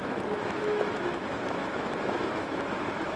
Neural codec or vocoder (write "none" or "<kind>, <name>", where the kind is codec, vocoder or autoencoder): autoencoder, DAC-VAE